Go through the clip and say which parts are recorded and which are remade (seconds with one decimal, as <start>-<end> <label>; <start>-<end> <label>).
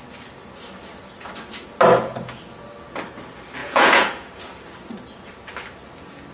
0.0-3.6 recorded; 3.6-4.4 remade; 4.4-6.3 recorded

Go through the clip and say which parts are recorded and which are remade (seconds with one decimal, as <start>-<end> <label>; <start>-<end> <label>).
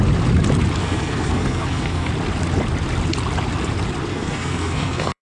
0.0-0.8 recorded; 0.8-2.1 remade; 2.1-4.1 recorded; 4.1-5.2 remade